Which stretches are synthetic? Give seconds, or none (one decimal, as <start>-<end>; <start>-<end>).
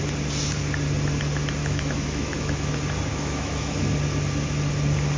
1.6-2.7; 3.1-3.8